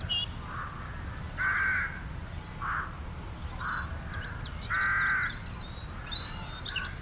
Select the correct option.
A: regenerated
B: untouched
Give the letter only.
B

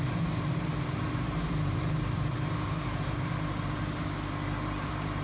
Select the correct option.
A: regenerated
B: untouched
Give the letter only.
A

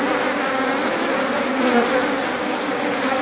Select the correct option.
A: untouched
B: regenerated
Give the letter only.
A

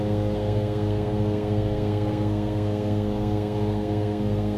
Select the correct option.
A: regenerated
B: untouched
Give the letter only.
A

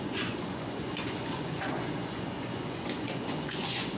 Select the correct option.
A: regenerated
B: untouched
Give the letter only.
A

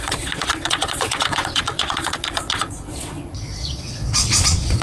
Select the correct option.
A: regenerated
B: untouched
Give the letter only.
A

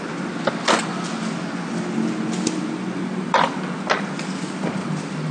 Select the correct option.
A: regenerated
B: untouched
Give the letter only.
B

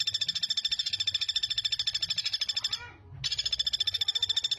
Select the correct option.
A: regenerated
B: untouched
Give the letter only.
B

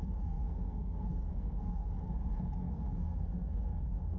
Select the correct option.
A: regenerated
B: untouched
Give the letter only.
A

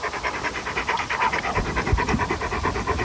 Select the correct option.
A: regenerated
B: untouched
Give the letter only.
B